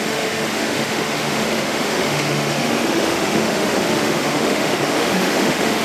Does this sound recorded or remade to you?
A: remade